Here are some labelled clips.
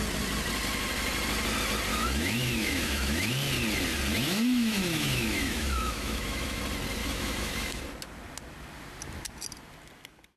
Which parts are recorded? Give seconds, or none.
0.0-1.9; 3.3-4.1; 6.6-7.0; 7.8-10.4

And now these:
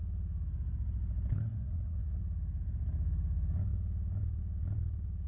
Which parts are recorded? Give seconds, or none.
0.0-1.3; 2.2-5.3

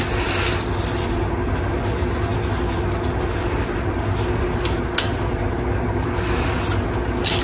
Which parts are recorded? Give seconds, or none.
0.0-7.4

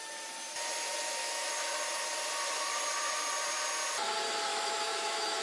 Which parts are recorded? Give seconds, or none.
0.0-1.2; 1.7-4.5

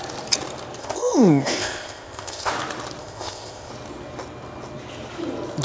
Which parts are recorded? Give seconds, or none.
0.0-0.8; 2.5-3.0; 3.7-5.6